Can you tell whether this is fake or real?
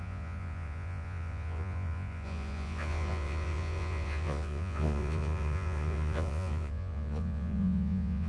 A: fake